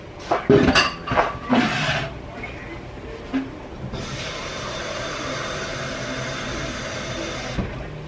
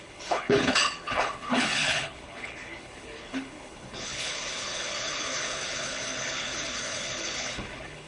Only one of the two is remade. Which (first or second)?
second